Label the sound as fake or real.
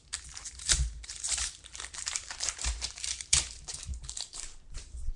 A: fake